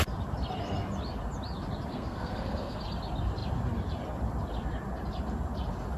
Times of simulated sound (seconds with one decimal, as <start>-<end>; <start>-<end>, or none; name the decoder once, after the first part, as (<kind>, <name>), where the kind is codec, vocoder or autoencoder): 1.9-2.8 (codec, SNAC)